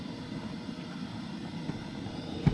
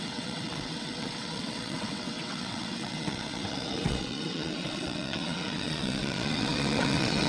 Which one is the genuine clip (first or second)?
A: first